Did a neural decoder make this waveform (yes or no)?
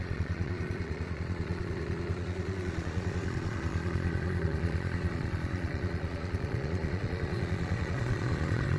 yes